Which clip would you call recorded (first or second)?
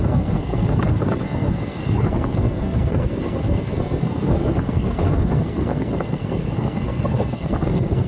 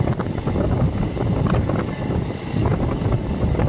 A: second